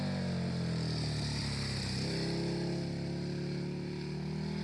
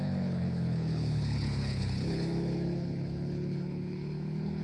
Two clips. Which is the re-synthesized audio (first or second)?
second